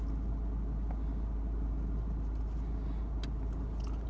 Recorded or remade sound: recorded